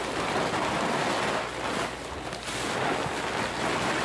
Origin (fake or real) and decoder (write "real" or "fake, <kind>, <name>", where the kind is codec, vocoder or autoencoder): real